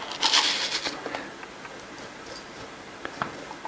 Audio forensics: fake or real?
real